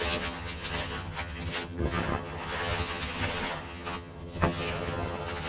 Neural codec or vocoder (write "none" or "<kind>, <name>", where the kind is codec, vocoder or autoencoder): vocoder, HiFi-GAN